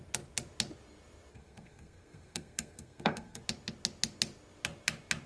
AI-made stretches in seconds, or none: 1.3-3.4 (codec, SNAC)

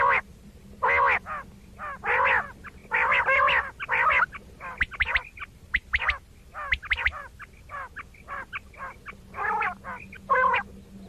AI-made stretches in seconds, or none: none

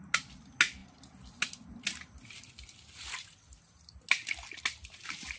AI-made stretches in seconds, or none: none

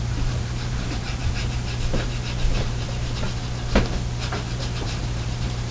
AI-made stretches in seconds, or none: 0.0-1.2 (vocoder, BigVGAN v2); 4.6-5.7

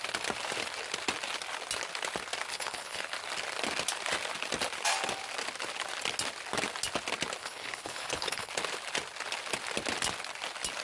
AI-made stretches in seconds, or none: 2.5-3.0 (codec, HILCodec); 7.4-8.5

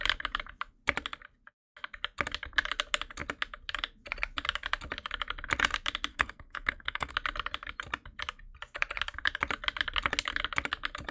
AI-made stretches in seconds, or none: 6.1-7.1 (codec, SNAC)

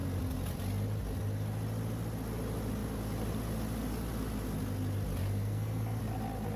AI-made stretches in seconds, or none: 5.2-6.0 (codec, SNAC)

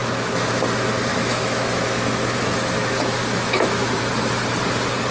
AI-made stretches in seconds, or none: 0.0-0.5 (autoencoder, DAC-VAE); 1.1-4.0